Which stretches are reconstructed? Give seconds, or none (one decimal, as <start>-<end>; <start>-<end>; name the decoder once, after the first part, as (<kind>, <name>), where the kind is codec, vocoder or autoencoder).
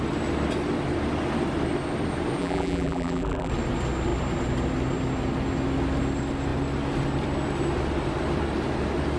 2.4-3.5 (vocoder, BigVGAN v2)